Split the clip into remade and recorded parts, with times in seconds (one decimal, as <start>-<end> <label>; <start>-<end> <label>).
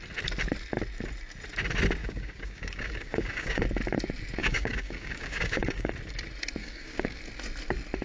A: 0.0-2.0 recorded; 2.0-3.6 remade; 3.6-4.4 recorded; 4.4-5.9 remade; 5.9-6.6 recorded; 6.6-7.2 remade; 7.2-8.0 recorded